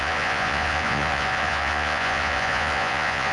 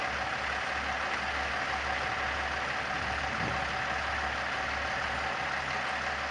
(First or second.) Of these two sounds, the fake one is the first